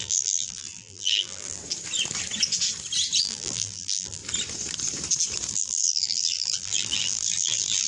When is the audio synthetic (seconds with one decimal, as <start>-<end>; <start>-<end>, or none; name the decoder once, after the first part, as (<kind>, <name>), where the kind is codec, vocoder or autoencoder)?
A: 0.0-1.6 (vocoder, BigVGAN v2); 3.2-4.2; 5.5-7.9